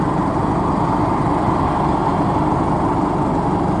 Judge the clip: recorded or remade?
recorded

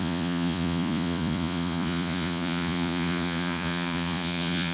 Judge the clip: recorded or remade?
remade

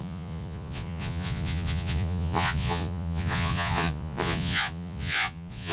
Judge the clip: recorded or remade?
remade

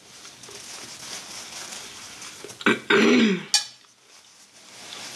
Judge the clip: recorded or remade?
recorded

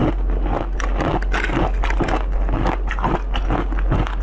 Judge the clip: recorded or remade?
recorded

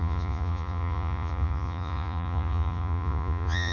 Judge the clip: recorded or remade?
remade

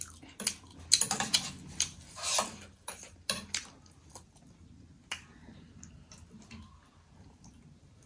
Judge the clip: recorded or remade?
recorded